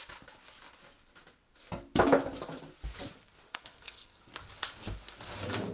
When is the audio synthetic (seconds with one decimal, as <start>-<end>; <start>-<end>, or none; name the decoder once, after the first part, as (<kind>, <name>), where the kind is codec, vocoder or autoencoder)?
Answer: 3.5-4.2 (codec, SNAC)